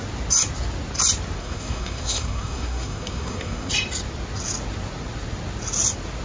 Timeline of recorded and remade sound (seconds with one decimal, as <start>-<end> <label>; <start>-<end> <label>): 0.0-1.4 recorded; 1.4-3.7 remade; 3.7-6.2 recorded